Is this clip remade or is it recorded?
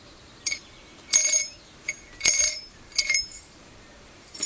remade